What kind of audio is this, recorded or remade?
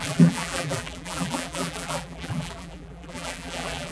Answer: remade